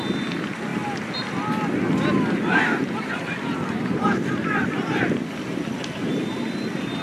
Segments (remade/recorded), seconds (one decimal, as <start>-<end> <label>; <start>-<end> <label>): 0.0-7.0 recorded